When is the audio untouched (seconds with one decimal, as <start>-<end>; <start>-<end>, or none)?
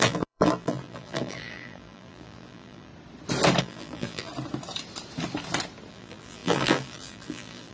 2.9-3.6; 4.3-5.9